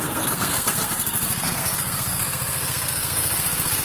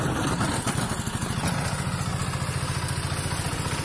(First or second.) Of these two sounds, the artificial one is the first